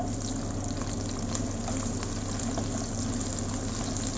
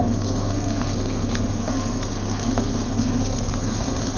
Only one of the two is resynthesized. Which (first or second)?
second